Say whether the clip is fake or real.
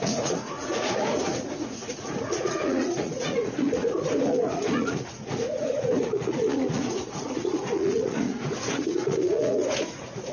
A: fake